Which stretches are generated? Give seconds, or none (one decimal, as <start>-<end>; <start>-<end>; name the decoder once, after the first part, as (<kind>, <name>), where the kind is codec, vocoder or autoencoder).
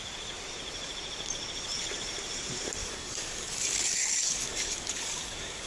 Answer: 2.8-5.7 (codec, DAC)